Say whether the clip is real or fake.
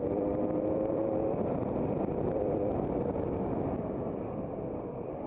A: fake